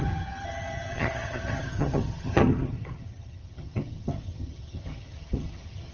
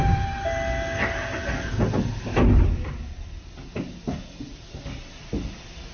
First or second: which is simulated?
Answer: first